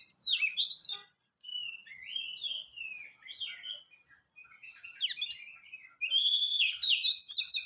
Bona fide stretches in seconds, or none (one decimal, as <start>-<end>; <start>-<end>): 0.0-6.2; 6.9-7.7